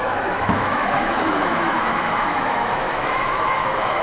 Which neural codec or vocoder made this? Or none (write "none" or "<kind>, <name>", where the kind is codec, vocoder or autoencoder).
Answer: autoencoder, DAC-VAE